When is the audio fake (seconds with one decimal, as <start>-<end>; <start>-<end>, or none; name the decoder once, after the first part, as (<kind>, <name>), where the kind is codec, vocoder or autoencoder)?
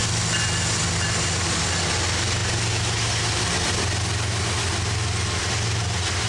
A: none